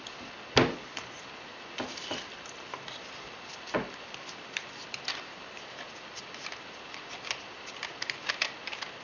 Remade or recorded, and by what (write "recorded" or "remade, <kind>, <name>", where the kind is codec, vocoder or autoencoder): recorded